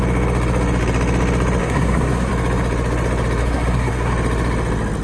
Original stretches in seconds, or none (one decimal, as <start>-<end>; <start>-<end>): 0.0-1.6; 2.3-3.4; 4.1-5.0